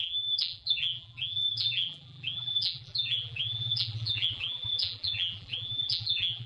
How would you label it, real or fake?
fake